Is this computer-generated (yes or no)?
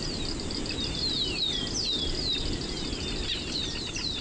no